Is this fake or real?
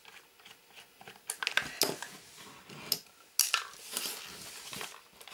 real